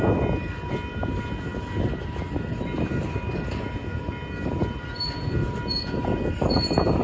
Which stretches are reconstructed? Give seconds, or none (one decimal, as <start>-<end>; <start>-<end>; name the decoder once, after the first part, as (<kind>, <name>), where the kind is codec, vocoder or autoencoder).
none